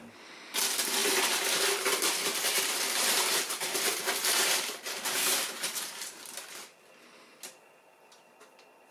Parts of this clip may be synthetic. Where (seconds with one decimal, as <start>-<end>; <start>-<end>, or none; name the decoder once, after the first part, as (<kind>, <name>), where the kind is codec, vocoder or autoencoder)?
1.0-6.2 (vocoder, BigVGAN v2)